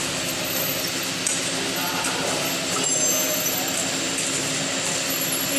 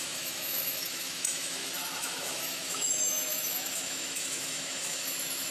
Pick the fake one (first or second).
second